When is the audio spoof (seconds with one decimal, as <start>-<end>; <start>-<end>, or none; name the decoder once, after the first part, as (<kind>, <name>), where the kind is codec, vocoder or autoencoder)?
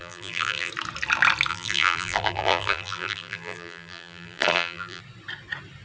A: 0.0-0.7 (vocoder, BigVGAN v2); 1.5-5.0